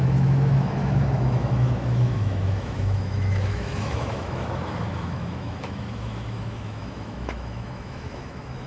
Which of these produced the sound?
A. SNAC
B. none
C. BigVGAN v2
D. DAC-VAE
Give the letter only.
D